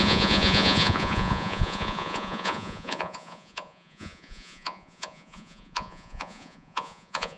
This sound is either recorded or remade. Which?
remade